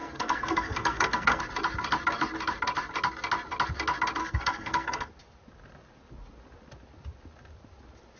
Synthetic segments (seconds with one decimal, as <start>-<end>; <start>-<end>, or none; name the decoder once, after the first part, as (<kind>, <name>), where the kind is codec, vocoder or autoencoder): 0.0-1.4 (codec, SNAC); 4.2-5.1